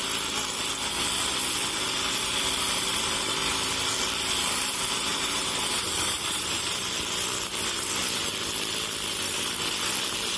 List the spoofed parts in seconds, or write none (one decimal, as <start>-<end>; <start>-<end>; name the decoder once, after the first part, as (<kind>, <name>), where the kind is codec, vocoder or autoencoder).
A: 5.1-6.9 (vocoder, BigVGAN v2)